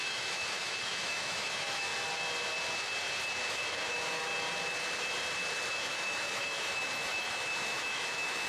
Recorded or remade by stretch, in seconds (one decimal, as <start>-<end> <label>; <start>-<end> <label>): 0.0-1.9 remade; 1.9-3.5 recorded; 3.5-4.3 remade; 4.3-5.7 recorded; 5.7-8.5 remade